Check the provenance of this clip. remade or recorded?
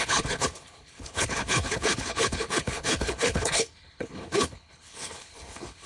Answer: remade